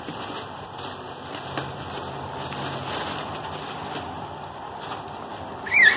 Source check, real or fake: real